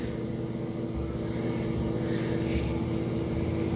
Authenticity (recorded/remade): recorded